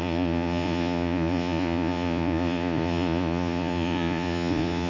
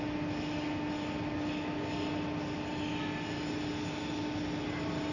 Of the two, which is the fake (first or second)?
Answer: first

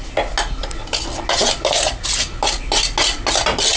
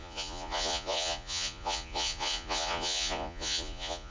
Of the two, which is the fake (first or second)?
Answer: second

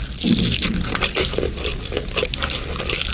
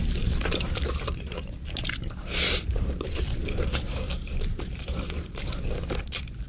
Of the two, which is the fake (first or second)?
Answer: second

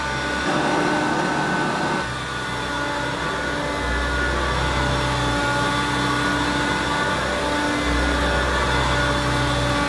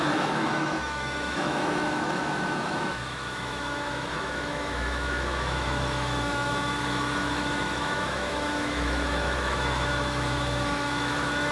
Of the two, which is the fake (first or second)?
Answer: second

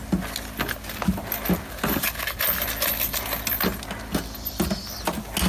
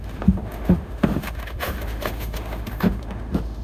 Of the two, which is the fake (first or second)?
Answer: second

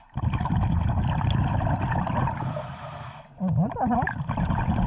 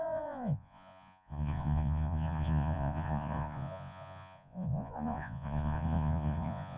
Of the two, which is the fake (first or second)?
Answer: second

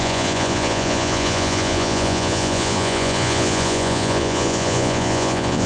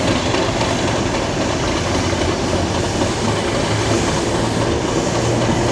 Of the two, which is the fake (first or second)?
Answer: first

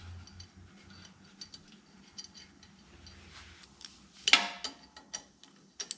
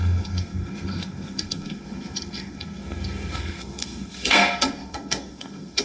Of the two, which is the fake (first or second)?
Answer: second